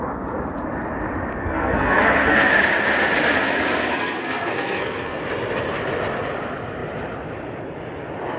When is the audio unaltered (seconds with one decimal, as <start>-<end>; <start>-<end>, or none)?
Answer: 0.0-1.3; 2.5-3.9; 5.2-8.4